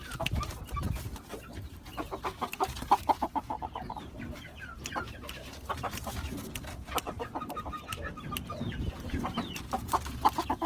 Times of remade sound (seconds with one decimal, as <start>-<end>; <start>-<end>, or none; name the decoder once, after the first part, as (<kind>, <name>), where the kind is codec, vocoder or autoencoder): 0.0-6.6 (vocoder, BigVGAN v2); 7.1-10.7